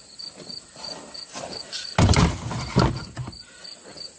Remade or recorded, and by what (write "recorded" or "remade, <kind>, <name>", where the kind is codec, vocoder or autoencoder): recorded